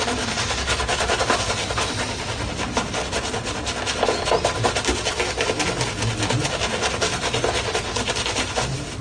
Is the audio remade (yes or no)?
no